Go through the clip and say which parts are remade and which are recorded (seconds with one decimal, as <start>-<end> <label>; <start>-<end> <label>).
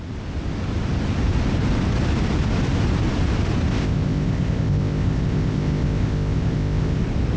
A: 0.0-3.7 recorded; 3.7-7.0 remade; 7.0-7.4 recorded